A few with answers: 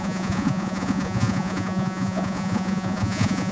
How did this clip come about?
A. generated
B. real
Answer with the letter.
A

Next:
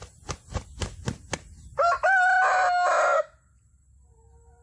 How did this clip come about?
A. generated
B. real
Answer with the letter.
B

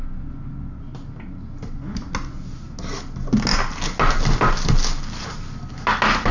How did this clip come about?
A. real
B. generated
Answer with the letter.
A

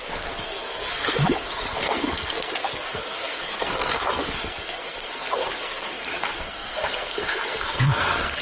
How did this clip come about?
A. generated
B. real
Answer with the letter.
A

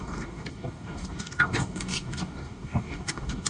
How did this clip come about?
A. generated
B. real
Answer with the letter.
A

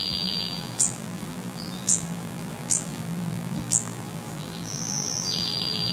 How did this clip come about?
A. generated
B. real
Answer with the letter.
A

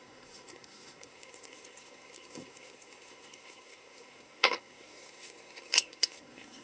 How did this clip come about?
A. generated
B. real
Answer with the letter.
A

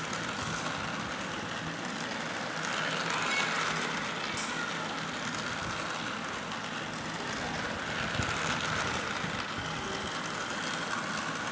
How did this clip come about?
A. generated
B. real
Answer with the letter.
B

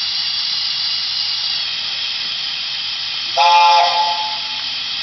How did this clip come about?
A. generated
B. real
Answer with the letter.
B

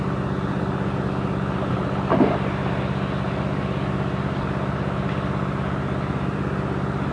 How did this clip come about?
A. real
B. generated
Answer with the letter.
A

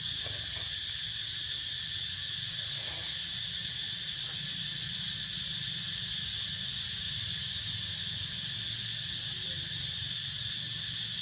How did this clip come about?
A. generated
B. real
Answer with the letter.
B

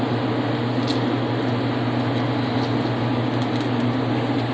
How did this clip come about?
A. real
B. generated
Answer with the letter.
A